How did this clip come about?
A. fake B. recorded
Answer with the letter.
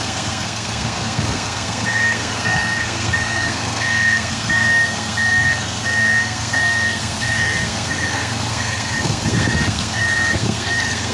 A